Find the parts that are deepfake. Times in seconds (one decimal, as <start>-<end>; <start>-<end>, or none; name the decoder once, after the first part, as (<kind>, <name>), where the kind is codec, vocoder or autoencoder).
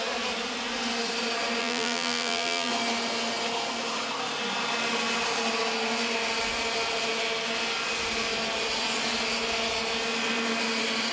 1.6-2.7 (vocoder, BigVGAN v2)